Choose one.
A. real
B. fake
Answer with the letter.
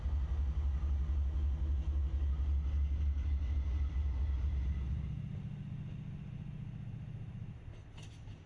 A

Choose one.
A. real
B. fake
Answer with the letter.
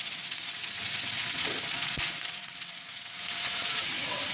B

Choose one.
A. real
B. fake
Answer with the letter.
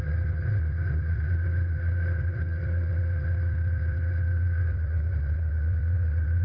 B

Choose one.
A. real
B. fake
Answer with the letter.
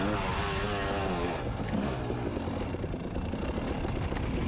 A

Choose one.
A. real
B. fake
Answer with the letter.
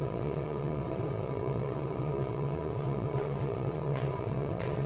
B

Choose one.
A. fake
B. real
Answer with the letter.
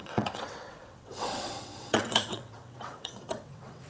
A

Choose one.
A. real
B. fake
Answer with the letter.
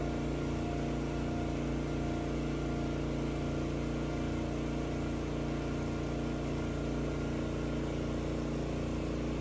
A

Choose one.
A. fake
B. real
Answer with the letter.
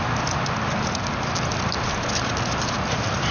B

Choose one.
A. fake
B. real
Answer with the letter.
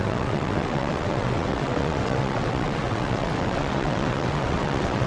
A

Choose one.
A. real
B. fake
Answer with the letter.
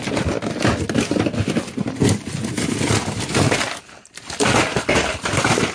A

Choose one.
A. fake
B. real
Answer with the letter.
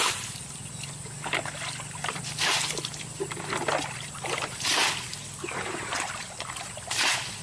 B